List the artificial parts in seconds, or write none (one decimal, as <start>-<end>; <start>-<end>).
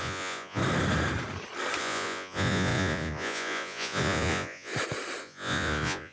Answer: 0.0-0.6; 1.8-4.7; 5.2-6.1